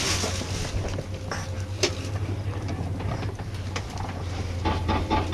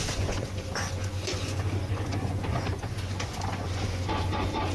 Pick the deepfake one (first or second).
second